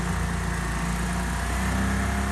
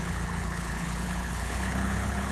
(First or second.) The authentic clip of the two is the first